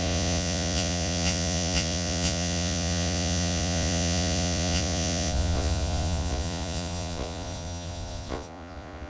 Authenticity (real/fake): fake